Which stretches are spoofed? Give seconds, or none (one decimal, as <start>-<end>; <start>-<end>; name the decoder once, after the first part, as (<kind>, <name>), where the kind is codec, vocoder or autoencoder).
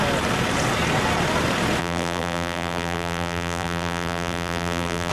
1.8-5.1 (vocoder, BigVGAN v2)